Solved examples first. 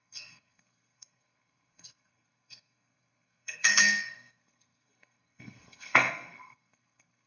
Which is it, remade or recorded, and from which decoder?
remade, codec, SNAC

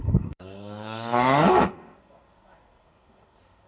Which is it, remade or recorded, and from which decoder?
remade, codec, SNAC